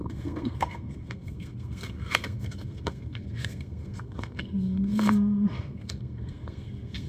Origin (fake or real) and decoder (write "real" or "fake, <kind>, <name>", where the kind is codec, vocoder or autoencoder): fake, codec, SNAC